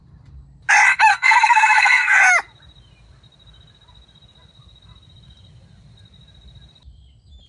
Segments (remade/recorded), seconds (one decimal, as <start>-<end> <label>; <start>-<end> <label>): 0.0-1.1 recorded; 1.1-2.2 remade; 2.2-7.5 recorded